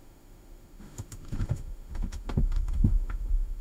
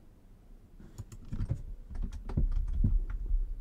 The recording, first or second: second